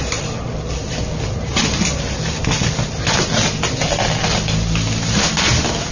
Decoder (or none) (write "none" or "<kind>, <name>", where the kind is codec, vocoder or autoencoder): none